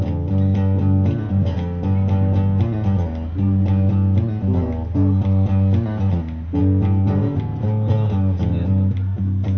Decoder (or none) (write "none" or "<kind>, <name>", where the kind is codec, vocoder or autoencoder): none